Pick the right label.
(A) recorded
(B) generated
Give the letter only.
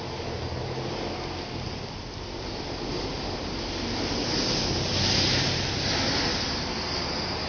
A